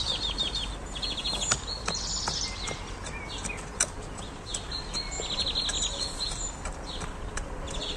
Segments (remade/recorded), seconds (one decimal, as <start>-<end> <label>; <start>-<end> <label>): 0.0-8.0 recorded